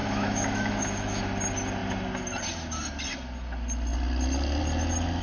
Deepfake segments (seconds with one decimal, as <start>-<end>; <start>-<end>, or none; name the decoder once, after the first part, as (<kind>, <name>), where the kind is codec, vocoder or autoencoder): 0.0-1.2 (autoencoder, DAC-VAE)